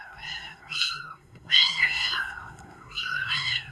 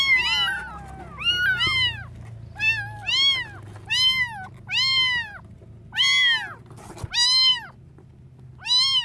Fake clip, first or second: first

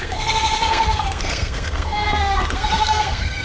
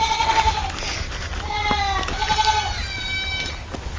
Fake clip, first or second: first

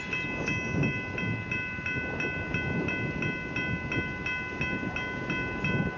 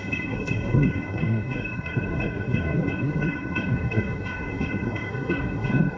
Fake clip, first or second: second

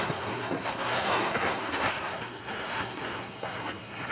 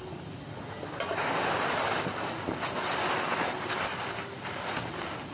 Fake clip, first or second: first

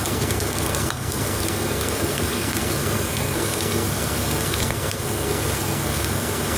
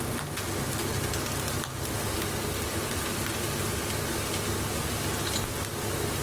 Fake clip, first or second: first